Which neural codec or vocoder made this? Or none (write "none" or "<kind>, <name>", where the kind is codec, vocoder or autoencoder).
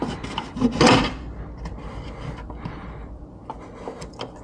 none